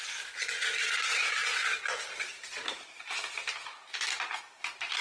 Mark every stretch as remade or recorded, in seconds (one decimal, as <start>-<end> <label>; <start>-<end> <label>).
0.0-5.0 recorded